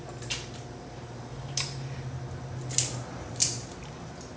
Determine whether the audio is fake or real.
real